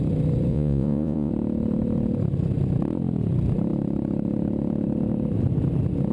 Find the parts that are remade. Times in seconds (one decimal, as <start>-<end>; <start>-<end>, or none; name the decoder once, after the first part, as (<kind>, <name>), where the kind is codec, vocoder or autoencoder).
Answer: 0.5-1.3 (vocoder, Vocos)